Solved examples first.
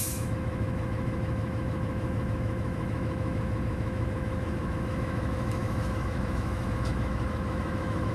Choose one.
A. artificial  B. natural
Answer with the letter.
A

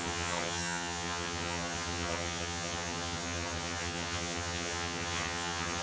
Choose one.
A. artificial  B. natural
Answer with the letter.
A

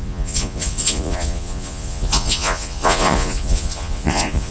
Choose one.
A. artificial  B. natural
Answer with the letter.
A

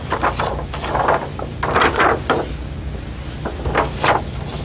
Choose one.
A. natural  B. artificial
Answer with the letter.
A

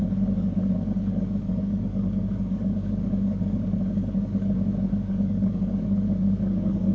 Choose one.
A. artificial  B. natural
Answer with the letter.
A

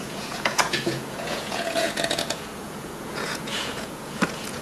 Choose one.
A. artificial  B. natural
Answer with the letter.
A